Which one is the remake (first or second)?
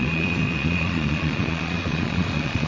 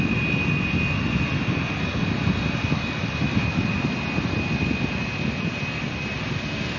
first